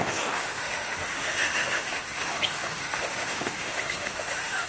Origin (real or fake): fake